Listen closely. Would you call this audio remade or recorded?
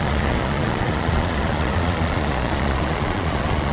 remade